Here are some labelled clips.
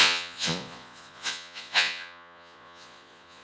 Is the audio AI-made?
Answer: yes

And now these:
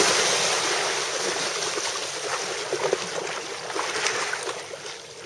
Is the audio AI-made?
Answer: no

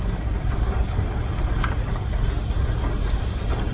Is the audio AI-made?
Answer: no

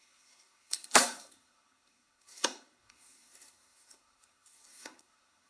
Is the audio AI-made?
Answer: yes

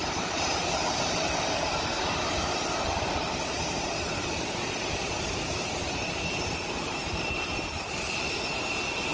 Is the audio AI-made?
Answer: yes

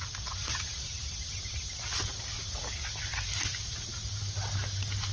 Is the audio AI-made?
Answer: no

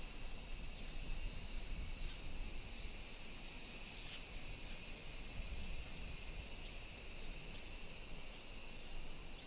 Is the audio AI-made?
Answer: no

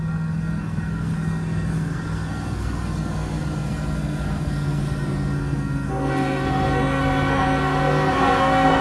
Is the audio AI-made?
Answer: yes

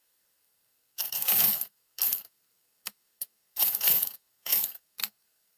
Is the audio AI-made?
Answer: yes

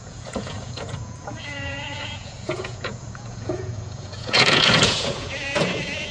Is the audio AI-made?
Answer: yes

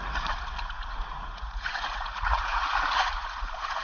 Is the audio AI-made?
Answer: yes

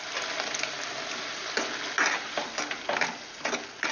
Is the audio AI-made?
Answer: no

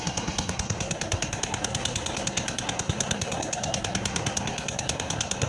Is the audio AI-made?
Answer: yes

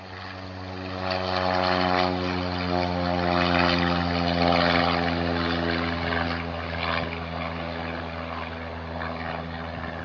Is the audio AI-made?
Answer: no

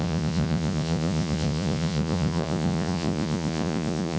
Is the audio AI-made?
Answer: yes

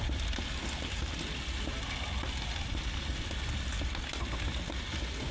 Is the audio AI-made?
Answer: no